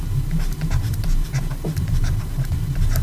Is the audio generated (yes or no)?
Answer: no